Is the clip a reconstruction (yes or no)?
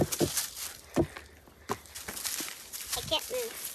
no